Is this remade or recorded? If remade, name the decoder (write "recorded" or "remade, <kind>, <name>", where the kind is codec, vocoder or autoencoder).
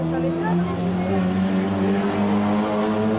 recorded